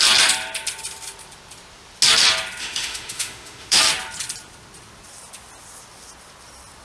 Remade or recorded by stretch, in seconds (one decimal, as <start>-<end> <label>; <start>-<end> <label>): 0.0-2.6 recorded; 2.6-3.8 remade; 3.8-6.8 recorded